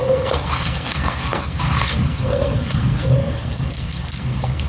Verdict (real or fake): fake